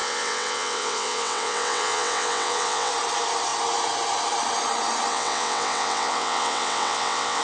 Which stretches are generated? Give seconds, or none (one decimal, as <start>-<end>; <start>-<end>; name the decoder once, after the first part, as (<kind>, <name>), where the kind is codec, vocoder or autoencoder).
0.0-2.9 (vocoder, WaveNeXt); 5.1-7.4